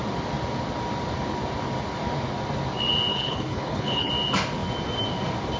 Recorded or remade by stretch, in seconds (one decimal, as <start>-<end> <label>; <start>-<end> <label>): 0.0-3.1 recorded; 3.1-4.1 remade; 4.1-5.6 recorded